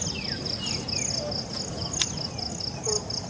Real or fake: real